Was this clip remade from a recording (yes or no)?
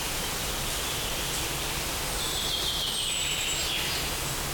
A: no